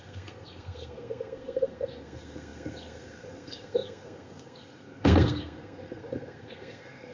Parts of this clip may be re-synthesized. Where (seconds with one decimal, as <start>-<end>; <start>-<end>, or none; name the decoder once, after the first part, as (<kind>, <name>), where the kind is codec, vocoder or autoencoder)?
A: 0.0-7.1 (codec, SNAC)